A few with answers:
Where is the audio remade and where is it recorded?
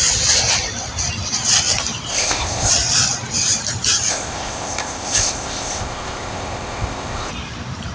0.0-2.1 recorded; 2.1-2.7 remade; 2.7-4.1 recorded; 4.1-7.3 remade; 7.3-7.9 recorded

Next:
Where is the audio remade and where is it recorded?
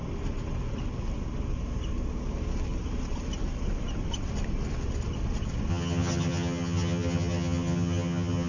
0.0-5.7 recorded; 5.7-8.5 remade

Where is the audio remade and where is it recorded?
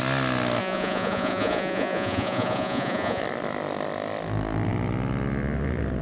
0.0-0.6 recorded; 0.6-3.2 remade; 3.2-6.0 recorded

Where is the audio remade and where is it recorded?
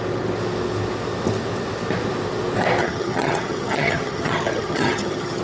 0.0-2.8 recorded; 2.8-5.4 remade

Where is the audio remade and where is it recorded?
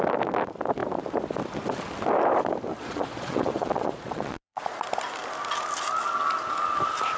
0.0-2.7 recorded; 2.7-4.9 remade; 4.9-7.2 recorded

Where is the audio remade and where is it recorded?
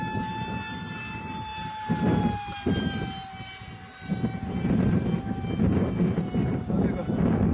0.0-7.5 recorded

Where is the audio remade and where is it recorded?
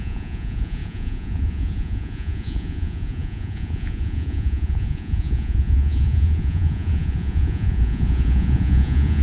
0.0-9.2 remade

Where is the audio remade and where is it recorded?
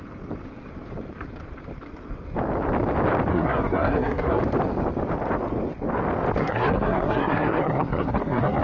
0.0-3.3 recorded; 3.3-4.4 remade; 4.4-6.4 recorded; 6.4-8.6 remade